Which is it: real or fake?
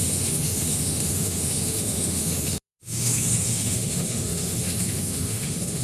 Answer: fake